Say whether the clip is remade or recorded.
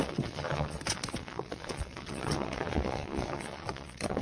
remade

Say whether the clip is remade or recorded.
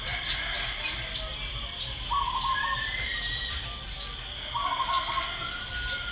recorded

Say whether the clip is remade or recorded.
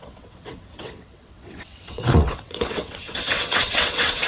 remade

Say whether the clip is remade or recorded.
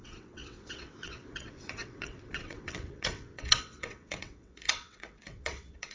remade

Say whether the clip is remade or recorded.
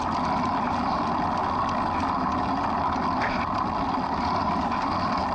recorded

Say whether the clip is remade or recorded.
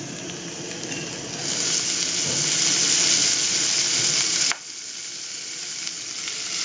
recorded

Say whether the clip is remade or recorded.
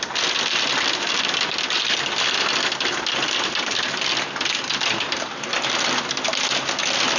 recorded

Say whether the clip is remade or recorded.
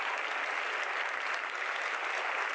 recorded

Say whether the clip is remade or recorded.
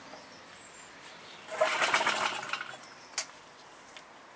recorded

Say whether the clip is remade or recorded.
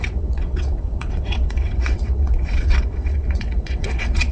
remade